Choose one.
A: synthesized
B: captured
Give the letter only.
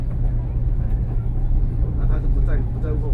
A